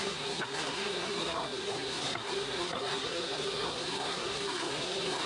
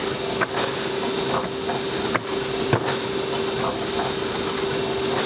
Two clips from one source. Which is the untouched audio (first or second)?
second